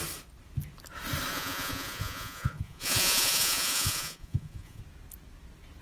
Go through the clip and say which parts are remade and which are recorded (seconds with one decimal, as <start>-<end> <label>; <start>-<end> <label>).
0.0-1.3 recorded; 1.3-4.8 remade; 4.8-5.8 recorded